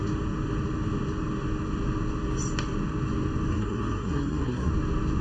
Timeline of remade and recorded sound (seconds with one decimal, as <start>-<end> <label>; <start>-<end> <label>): 0.0-3.5 recorded; 3.5-4.7 remade; 4.7-5.2 recorded